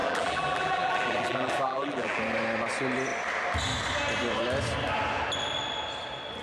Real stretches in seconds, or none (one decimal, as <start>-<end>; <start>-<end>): 2.2-6.4